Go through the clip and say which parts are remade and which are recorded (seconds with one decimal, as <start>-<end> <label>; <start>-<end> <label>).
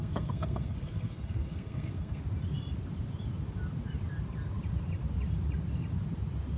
0.0-2.2 remade; 2.2-6.6 recorded